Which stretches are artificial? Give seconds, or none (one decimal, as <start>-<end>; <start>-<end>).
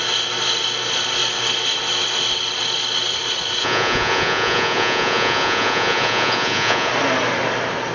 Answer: 3.6-6.9